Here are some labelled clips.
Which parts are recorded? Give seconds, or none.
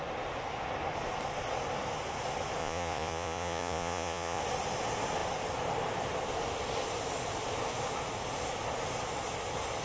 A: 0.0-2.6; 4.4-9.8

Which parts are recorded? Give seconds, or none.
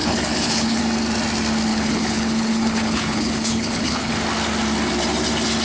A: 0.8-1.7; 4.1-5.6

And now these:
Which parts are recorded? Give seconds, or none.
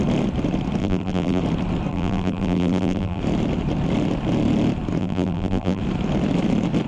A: 0.0-0.8; 1.4-1.9; 3.2-5.0; 5.8-6.9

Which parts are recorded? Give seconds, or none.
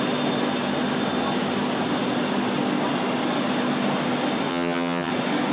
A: 0.0-4.5; 5.1-5.5